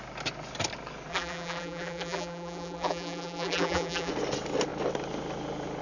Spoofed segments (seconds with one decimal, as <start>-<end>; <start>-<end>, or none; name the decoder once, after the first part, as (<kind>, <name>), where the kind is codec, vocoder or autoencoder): 1.1-4.1 (vocoder, BigVGAN v2)